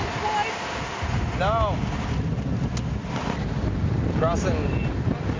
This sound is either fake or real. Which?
real